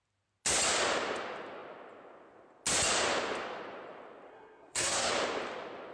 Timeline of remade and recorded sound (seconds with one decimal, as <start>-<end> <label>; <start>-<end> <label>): 0.0-4.3 recorded; 4.3-5.1 remade; 5.1-5.9 recorded